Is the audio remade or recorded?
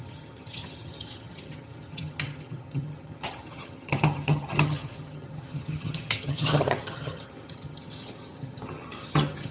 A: remade